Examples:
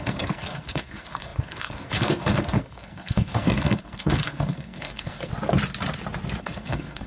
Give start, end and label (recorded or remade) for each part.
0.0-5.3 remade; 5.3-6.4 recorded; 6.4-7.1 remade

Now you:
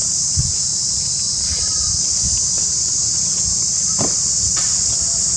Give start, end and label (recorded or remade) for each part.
0.0-5.4 recorded

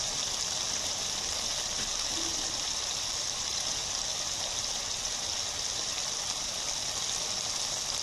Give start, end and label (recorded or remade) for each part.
0.0-2.3 recorded; 2.3-3.2 remade; 3.2-3.8 recorded; 3.8-4.8 remade; 4.8-8.0 recorded

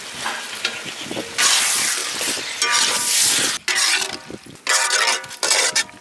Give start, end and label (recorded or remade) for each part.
0.0-6.0 recorded

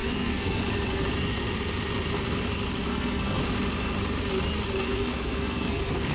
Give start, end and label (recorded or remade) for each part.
0.0-0.6 remade; 0.6-2.9 recorded; 2.9-3.4 remade; 3.4-4.8 recorded; 4.8-6.1 remade

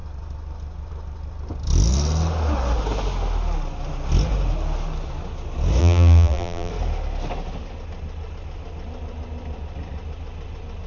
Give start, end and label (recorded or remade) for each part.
0.0-5.8 recorded; 5.8-6.7 remade; 6.7-10.9 recorded

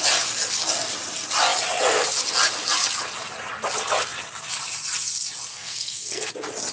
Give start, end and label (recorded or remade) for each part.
0.0-5.5 recorded; 5.5-6.3 remade; 6.3-6.7 recorded